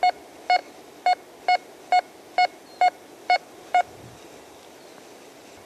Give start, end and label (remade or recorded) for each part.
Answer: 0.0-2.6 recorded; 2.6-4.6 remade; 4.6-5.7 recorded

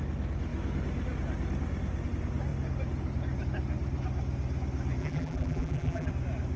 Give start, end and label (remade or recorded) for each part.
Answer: 0.0-5.0 recorded; 5.0-6.1 remade; 6.1-6.6 recorded

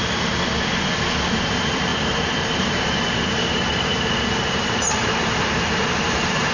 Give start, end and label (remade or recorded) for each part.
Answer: 0.0-1.3 recorded; 1.3-6.5 remade

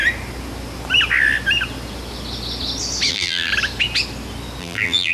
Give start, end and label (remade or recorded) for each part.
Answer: 0.0-3.1 recorded; 3.1-3.5 remade; 3.5-4.6 recorded; 4.6-5.1 remade

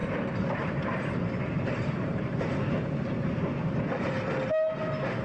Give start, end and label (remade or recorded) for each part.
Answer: 0.0-3.1 remade; 3.1-5.2 recorded